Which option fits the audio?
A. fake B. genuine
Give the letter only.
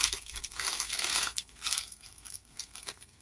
A